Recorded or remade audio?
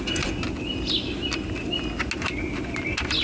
recorded